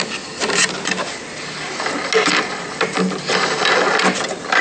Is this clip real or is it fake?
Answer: real